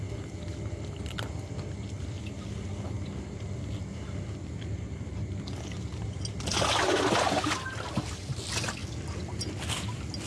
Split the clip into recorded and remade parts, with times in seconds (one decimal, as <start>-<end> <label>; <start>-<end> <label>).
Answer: 0.0-10.3 recorded